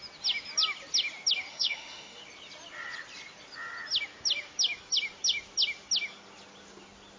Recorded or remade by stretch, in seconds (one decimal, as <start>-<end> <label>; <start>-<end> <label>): 0.0-1.5 recorded; 1.5-2.2 remade; 2.2-7.2 recorded